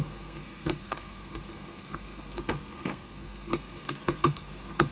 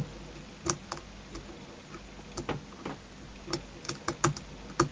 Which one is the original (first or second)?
second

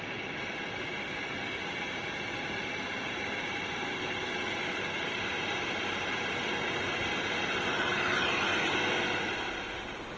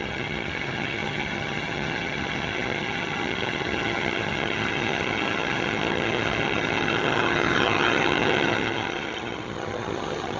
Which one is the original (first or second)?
first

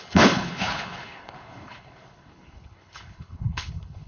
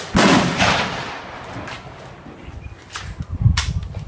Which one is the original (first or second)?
second